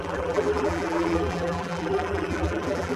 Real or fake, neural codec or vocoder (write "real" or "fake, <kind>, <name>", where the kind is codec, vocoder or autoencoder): fake, vocoder, BigVGAN v2